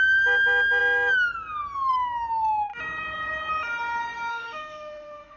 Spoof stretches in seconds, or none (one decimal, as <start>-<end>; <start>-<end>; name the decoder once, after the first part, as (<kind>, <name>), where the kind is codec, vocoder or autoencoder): 4.3-5.4 (autoencoder, DAC-VAE)